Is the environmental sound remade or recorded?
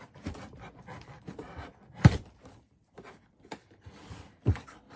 remade